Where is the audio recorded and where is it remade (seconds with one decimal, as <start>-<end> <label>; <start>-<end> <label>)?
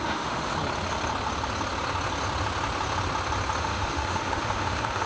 0.0-0.5 remade; 0.5-3.6 recorded; 3.6-5.1 remade